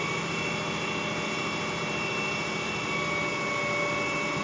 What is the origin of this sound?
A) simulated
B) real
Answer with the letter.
B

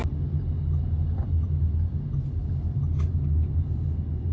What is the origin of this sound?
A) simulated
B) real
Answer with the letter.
B